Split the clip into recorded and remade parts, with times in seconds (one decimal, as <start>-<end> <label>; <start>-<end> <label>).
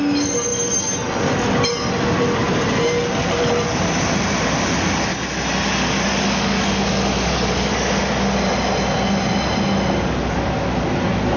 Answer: 0.0-5.8 recorded; 5.8-8.0 remade; 8.0-11.4 recorded